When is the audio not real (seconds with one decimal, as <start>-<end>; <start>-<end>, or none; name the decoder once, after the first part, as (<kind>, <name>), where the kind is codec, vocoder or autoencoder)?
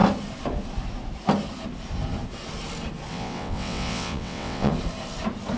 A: 3.1-4.7 (vocoder, WaveNeXt)